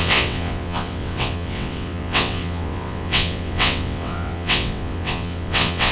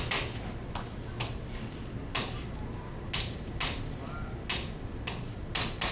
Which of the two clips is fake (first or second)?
first